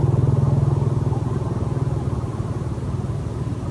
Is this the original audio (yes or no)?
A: yes